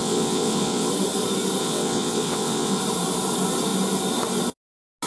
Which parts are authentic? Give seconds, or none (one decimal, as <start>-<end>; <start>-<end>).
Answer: 0.9-1.6; 2.8-5.1